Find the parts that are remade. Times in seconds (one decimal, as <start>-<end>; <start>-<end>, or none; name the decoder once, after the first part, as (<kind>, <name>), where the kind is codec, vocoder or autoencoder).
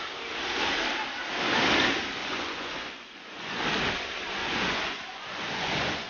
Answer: 2.2-3.6 (vocoder, Vocos); 4.4-6.1